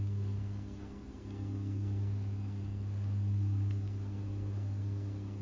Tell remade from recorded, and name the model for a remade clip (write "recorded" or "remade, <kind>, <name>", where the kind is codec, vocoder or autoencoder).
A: remade, codec, SNAC